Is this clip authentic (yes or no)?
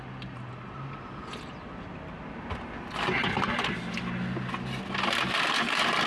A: yes